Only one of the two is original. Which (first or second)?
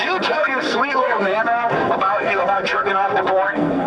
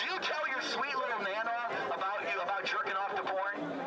second